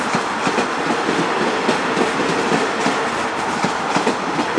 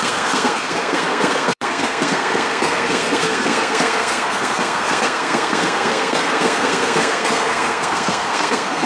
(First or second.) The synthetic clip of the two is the second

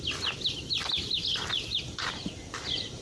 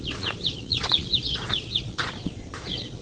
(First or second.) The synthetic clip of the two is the second